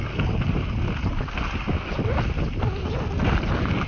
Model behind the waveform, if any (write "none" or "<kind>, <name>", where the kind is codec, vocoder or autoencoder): none